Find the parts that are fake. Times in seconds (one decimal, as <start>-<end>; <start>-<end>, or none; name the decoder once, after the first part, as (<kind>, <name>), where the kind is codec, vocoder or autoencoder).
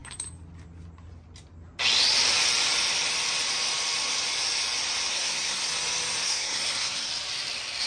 5.1-5.7 (codec, SNAC); 6.2-7.1